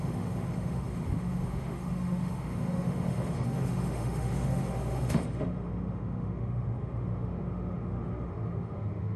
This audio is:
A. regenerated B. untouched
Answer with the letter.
A